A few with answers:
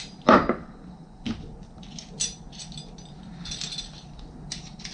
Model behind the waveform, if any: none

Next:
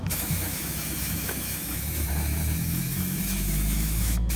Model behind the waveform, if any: autoencoder, DAC-VAE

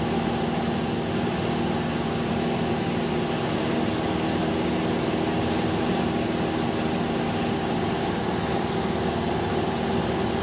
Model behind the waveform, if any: none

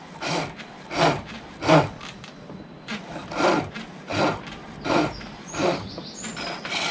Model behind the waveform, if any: vocoder, BigVGAN v2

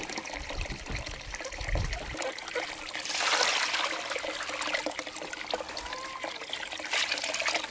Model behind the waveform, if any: none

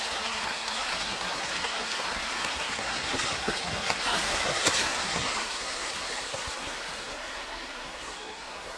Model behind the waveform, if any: codec, SNAC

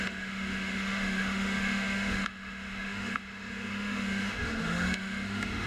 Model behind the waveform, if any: autoencoder, DAC-VAE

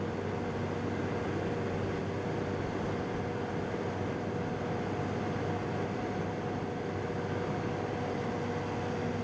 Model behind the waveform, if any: none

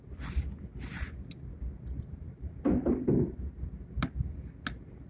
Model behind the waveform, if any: none